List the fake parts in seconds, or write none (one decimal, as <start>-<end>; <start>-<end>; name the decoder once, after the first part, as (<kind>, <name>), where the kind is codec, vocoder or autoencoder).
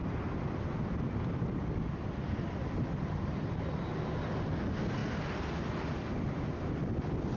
none